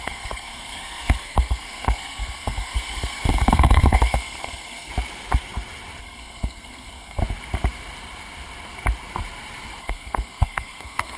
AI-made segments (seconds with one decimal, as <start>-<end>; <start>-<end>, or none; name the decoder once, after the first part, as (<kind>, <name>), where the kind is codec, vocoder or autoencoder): 0.0-4.9 (codec, SNAC); 6.0-7.2; 9.8-11.2